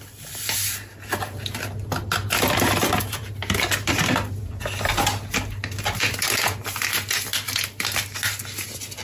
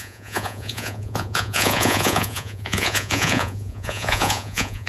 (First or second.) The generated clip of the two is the second